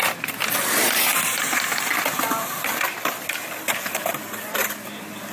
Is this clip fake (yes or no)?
no